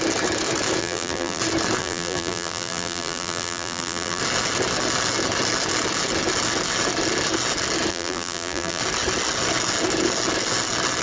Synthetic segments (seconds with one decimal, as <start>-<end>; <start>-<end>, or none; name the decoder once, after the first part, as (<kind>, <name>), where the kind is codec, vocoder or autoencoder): 0.8-1.4 (vocoder, BigVGAN v2); 1.8-4.2; 7.9-8.8